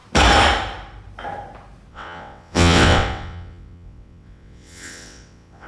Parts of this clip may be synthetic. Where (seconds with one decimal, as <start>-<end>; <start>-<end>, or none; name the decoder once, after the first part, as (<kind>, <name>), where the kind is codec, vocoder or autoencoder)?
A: 1.9-5.7 (vocoder, WaveNeXt)